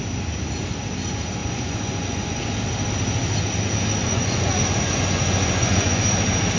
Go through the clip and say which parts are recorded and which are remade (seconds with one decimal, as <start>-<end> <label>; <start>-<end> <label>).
0.0-1.4 recorded; 1.4-2.4 remade; 2.4-4.0 recorded; 4.0-6.0 remade; 6.0-6.6 recorded